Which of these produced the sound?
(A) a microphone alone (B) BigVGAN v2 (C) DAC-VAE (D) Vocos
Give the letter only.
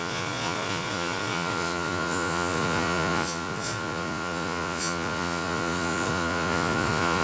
D